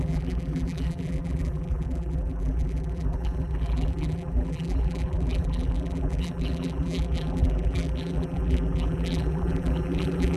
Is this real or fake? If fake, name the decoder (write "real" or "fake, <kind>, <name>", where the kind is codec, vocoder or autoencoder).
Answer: fake, vocoder, BigVGAN v2